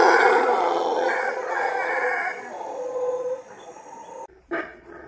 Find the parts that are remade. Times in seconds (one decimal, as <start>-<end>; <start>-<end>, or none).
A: 0.0-4.0; 4.6-5.1